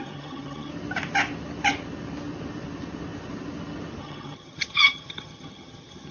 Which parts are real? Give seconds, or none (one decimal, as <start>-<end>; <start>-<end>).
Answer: 0.7-4.0